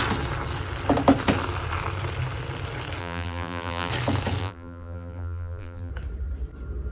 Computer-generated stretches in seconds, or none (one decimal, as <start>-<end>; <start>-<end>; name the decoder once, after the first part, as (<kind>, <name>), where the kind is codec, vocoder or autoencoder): 3.0-3.9 (vocoder, BigVGAN v2); 4.4-5.9

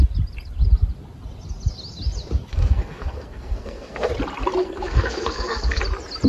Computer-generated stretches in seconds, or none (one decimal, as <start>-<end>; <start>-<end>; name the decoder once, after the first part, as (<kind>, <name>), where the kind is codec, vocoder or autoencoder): 2.5-4.1 (codec, SNAC); 4.6-5.8

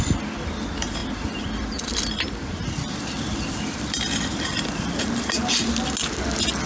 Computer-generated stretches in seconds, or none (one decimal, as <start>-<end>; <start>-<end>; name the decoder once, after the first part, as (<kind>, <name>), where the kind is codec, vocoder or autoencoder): 1.0-5.0 (vocoder, BigVGAN v2)

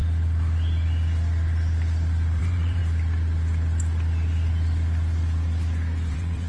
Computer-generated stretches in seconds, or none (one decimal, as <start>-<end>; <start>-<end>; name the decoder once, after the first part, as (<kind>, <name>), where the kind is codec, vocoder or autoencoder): 2.4-2.8 (vocoder, WaveNeXt); 6.1-6.5

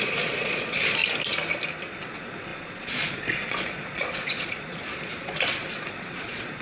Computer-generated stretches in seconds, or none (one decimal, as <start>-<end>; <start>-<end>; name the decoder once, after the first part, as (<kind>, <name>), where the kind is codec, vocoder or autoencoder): 0.0-1.0 (vocoder, Vocos); 2.0-6.6

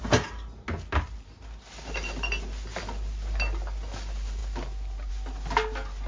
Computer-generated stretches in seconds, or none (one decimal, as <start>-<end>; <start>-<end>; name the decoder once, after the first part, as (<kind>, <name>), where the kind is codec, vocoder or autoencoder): none

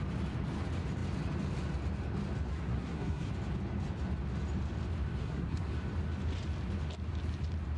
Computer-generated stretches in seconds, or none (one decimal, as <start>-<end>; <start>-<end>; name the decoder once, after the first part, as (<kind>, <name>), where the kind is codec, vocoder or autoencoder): 2.5-3.3 (codec, SNAC); 5.2-5.7

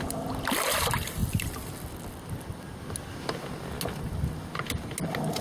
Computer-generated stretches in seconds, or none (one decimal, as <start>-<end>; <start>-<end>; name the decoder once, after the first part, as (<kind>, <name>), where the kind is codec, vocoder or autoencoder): none